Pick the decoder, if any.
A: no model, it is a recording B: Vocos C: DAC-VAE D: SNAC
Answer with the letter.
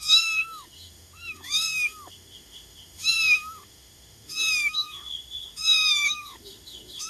C